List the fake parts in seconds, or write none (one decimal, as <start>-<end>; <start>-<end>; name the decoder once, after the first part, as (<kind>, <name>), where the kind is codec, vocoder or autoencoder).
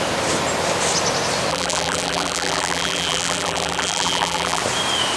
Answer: 1.5-4.6 (vocoder, BigVGAN v2)